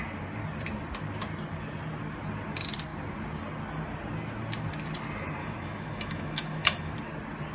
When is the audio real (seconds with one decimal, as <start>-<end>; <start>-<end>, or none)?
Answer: 0.0-5.4; 6.9-7.5